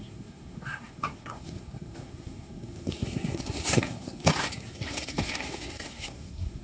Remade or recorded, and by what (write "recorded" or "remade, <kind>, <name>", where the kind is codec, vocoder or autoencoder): remade, codec, SNAC